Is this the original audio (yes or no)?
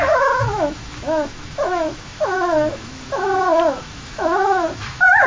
no